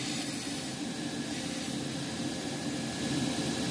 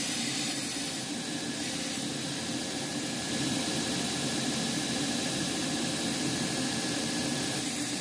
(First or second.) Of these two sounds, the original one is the first